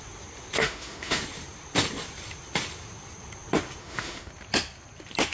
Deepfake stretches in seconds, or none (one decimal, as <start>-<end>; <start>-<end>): 0.6-1.2; 3.8-4.3